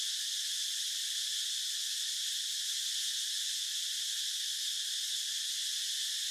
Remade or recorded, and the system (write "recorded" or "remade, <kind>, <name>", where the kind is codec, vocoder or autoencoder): recorded